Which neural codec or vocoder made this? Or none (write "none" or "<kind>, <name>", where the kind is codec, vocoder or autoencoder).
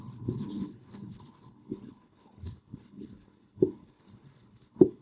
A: codec, HILCodec